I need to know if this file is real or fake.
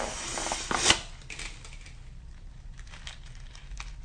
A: real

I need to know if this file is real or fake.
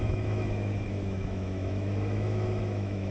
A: fake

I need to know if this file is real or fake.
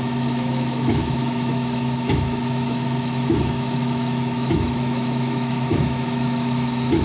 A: fake